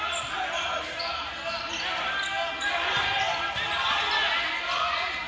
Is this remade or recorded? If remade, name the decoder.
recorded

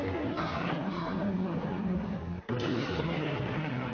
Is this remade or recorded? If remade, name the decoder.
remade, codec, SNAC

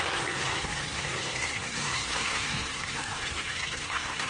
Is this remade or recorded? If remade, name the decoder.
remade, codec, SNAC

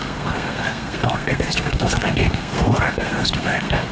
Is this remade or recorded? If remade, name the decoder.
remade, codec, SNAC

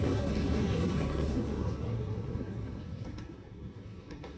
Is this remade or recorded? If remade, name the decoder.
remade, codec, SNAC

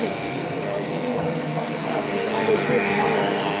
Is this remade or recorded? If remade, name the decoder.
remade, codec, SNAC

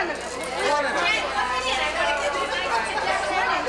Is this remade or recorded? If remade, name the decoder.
recorded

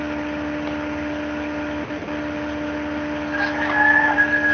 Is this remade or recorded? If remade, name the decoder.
recorded